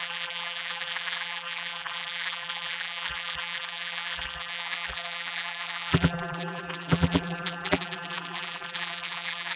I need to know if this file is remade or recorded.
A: remade